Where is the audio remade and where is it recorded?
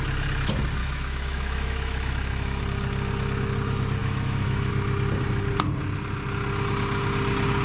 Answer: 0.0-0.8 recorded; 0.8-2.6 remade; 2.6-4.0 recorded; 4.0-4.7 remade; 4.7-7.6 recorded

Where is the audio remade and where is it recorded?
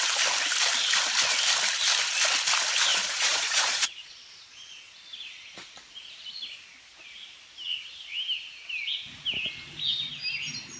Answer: 0.0-2.9 recorded; 2.9-4.9 remade; 4.9-10.8 recorded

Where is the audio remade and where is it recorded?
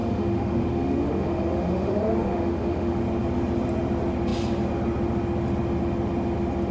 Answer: 0.0-3.0 remade; 3.0-6.7 recorded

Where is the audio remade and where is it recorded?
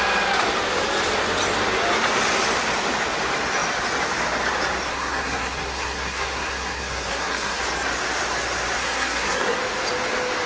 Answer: 0.0-4.9 recorded; 4.9-7.6 remade; 7.6-8.8 recorded; 8.8-9.6 remade; 9.6-10.5 recorded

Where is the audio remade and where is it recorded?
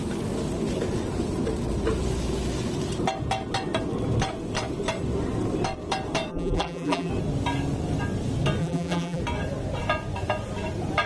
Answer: 0.0-6.3 recorded; 6.3-7.1 remade; 7.1-8.6 recorded; 8.6-9.2 remade; 9.2-11.1 recorded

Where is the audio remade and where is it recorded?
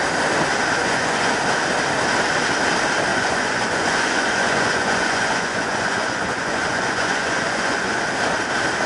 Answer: 0.0-0.8 recorded; 0.8-1.3 remade; 1.3-3.1 recorded; 3.1-8.0 remade; 8.0-8.9 recorded